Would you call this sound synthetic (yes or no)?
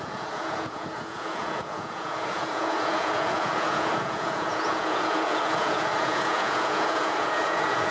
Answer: yes